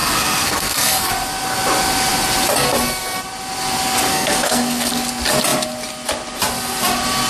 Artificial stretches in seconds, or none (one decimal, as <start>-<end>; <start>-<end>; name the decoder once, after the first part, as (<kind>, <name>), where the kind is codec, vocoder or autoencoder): 0.0-1.1 (codec, SNAC); 4.1-4.9